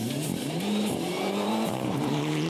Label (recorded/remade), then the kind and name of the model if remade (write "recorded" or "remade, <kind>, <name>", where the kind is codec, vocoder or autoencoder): remade, vocoder, BigVGAN v2